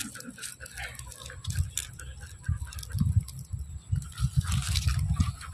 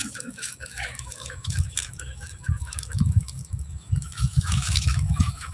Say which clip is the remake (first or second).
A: second